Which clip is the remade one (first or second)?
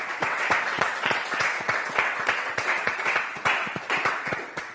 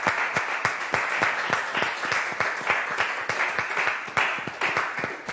first